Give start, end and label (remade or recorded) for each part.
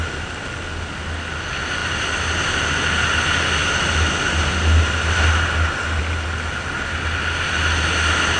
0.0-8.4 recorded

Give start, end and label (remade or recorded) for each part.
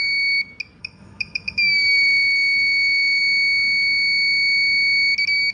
0.0-0.8 recorded; 0.8-3.2 remade; 3.2-5.5 recorded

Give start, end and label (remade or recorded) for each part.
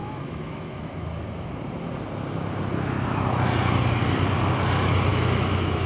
0.0-0.9 remade; 0.9-5.1 recorded; 5.1-5.9 remade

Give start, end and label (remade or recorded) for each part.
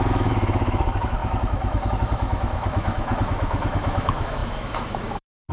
0.0-5.5 remade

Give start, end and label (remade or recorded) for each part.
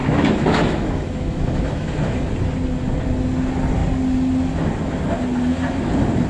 0.0-2.3 remade; 2.3-6.3 recorded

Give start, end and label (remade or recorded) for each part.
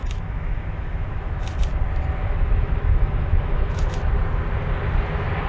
0.0-1.3 remade; 1.3-2.2 recorded; 2.2-3.8 remade; 3.8-5.5 recorded